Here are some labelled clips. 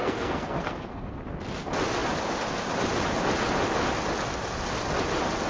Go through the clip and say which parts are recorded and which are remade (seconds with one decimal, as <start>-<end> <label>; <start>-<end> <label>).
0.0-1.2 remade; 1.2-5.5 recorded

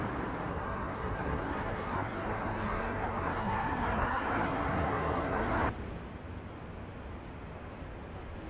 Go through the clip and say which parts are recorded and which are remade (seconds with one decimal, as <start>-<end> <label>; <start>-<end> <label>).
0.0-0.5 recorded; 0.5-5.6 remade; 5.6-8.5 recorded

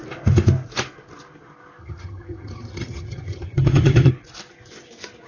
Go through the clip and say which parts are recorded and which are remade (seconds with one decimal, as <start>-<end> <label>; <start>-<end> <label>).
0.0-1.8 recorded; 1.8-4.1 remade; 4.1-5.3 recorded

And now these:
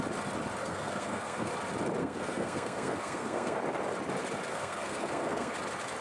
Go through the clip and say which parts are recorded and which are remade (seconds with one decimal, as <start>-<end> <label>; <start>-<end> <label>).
0.0-0.6 recorded; 0.6-1.5 remade; 1.5-2.0 recorded; 2.0-3.6 remade; 3.6-4.5 recorded; 4.5-5.5 remade; 5.5-6.0 recorded

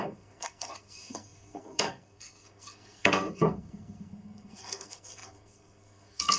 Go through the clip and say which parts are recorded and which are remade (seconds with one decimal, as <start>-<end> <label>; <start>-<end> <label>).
0.0-6.4 remade